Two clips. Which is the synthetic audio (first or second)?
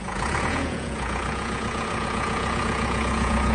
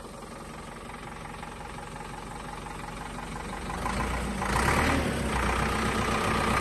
first